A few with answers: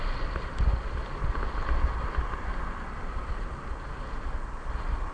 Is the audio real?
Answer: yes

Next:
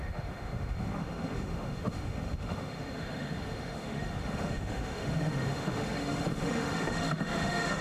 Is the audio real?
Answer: no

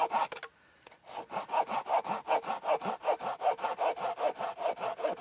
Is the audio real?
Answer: yes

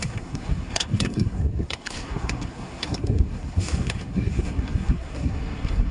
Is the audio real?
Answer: no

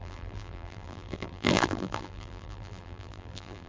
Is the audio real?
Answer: no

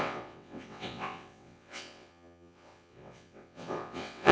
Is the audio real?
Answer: no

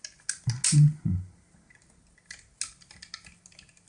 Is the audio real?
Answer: yes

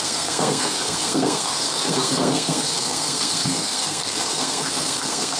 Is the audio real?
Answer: no